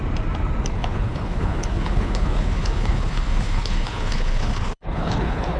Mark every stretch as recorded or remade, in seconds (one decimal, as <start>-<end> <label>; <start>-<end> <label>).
0.0-0.7 recorded; 0.7-5.6 remade